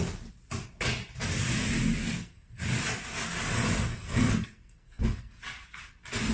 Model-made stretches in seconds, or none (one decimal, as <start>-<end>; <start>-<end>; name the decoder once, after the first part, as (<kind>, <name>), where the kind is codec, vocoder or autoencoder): 2.0-2.6 (codec, SNAC); 3.9-5.4